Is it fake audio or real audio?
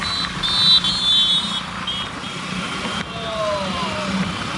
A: real